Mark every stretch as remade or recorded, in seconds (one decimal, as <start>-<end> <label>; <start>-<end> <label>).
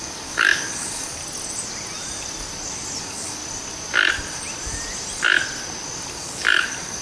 0.0-1.2 remade; 1.2-3.0 recorded; 3.0-3.4 remade; 3.4-6.1 recorded; 6.1-7.0 remade